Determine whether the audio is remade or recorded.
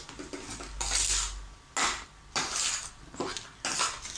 recorded